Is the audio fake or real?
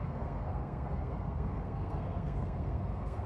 fake